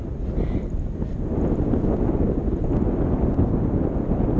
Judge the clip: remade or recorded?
recorded